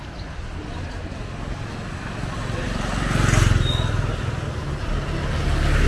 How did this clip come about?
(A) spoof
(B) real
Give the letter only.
B